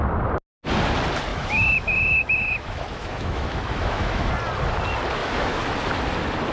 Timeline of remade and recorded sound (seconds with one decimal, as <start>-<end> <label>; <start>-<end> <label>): 0.0-1.3 recorded; 1.3-4.3 remade; 4.3-5.2 recorded; 5.2-5.7 remade; 5.7-6.5 recorded